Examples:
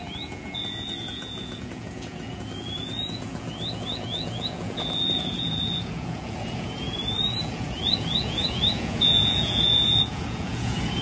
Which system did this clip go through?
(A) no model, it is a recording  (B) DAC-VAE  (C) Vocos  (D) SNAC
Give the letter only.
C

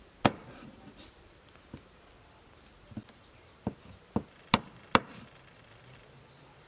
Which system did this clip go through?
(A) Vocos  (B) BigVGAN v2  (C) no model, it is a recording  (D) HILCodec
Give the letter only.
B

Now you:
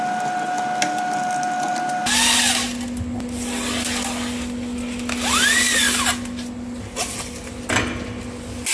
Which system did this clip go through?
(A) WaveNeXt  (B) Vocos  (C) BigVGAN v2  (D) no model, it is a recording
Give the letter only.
D